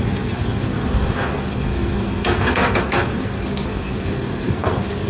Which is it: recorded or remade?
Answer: remade